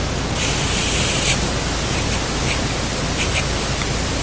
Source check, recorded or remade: recorded